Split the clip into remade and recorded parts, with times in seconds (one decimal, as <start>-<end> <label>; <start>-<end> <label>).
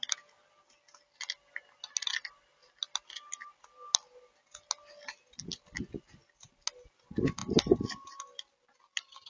0.0-9.3 recorded